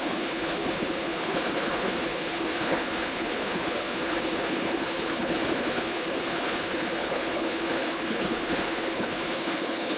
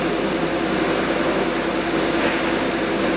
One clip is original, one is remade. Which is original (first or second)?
second